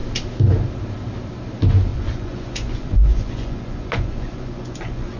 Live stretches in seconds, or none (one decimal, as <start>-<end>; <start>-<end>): 0.0-1.9